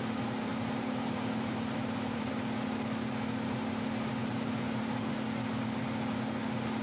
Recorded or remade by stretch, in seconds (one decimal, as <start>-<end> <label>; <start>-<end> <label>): 0.0-0.5 recorded; 0.5-2.3 remade; 2.3-4.2 recorded; 4.2-5.1 remade; 5.1-6.8 recorded